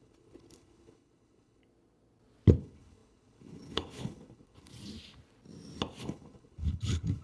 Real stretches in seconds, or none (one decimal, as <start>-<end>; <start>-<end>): 1.6-2.6; 4.7-6.0